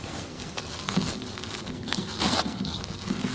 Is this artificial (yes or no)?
yes